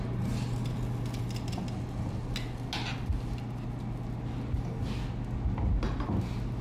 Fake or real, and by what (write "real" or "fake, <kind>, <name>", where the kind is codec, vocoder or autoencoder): real